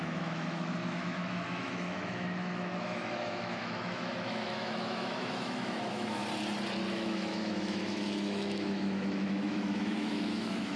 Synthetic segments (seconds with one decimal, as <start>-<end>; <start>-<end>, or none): 0.0-6.2; 6.9-10.8